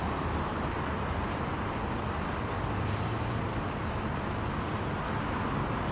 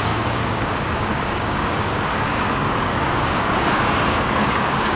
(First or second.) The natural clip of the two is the first